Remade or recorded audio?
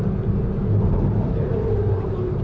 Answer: recorded